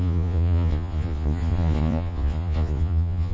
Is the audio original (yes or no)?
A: no